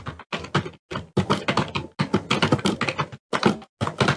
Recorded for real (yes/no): yes